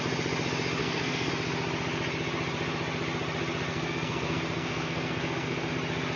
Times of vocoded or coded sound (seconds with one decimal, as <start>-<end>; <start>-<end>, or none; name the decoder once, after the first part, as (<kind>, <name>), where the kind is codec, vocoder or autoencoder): 0.8-1.3 (codec, SNAC); 3.7-5.7